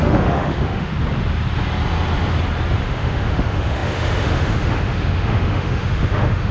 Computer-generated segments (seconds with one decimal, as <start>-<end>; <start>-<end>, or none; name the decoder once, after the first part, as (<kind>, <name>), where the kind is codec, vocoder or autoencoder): 0.0-0.9 (autoencoder, DAC-VAE); 2.8-6.5